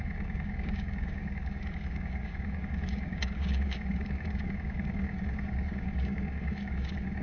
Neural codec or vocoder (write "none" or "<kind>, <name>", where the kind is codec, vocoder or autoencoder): codec, DAC